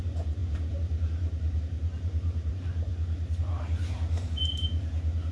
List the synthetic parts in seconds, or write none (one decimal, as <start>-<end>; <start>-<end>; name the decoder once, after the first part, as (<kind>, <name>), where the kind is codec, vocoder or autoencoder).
0.0-2.9 (vocoder, BigVGAN v2); 3.4-5.3